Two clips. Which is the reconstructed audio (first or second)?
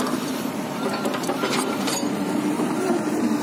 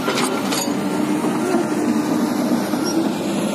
first